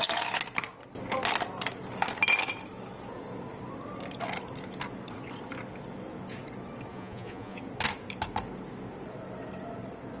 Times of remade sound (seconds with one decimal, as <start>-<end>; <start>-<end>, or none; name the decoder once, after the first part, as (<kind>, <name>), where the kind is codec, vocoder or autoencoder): 6.9-7.6 (vocoder, Vocos)